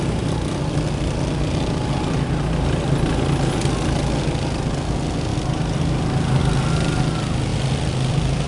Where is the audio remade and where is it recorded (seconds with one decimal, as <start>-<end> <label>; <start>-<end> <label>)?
0.0-8.5 recorded